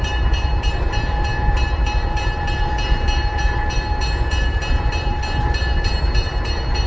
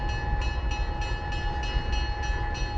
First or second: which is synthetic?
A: first